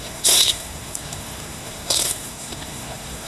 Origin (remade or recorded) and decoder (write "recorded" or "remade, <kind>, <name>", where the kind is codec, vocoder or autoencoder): remade, codec, SNAC